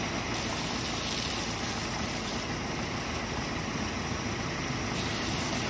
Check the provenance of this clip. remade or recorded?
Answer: recorded